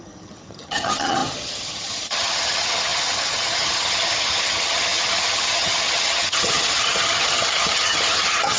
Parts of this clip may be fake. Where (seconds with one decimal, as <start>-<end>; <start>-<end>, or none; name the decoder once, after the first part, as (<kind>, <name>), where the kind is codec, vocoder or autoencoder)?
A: 0.0-8.6 (vocoder, HiFi-GAN)